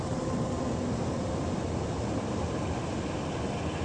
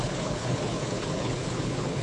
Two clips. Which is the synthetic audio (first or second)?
second